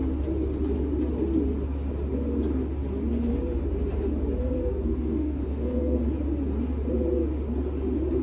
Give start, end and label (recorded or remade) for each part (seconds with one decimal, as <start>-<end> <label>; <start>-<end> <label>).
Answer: 0.0-4.6 recorded; 4.6-6.0 remade; 6.0-8.2 recorded